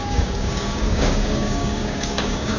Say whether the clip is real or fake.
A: fake